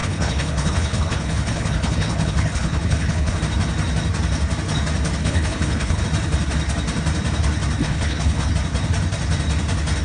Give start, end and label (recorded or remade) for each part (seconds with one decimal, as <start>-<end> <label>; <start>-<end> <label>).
0.0-3.4 remade; 3.4-5.2 recorded; 5.2-6.0 remade; 6.0-7.8 recorded; 7.8-8.5 remade; 8.5-10.0 recorded